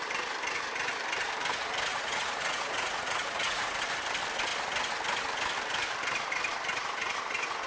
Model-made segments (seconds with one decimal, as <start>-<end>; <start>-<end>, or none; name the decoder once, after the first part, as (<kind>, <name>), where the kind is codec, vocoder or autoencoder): 1.9-3.8 (vocoder, Vocos)